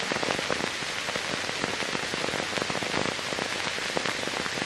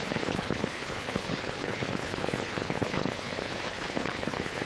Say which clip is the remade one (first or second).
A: second